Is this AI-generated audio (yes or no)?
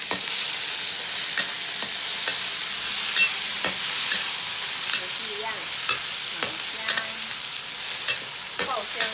no